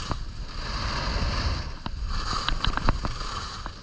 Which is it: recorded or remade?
recorded